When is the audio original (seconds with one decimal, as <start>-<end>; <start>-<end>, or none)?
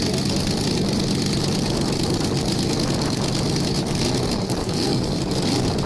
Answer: 0.0-4.6; 5.2-5.9